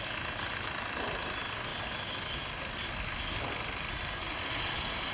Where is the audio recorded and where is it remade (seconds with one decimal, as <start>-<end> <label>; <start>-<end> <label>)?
0.0-5.1 recorded